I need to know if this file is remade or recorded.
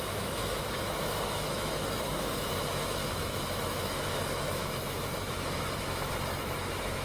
remade